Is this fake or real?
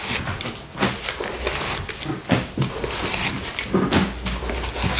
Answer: real